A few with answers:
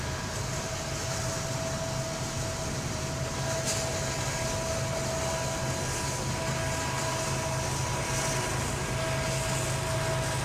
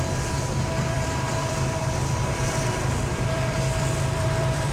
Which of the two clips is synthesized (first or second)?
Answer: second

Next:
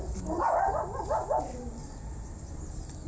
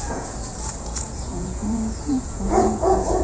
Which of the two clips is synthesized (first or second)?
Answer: second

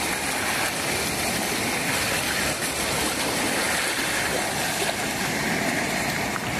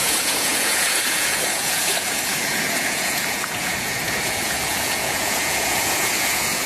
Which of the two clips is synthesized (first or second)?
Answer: second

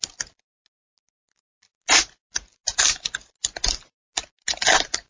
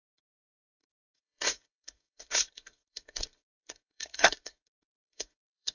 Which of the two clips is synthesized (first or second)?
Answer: second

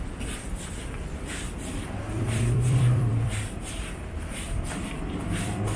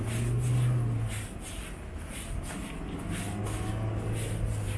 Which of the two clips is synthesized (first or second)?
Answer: first